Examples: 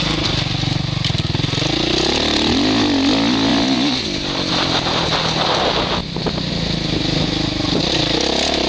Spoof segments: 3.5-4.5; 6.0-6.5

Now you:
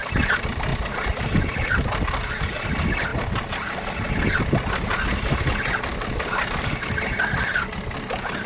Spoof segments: 0.7-2.2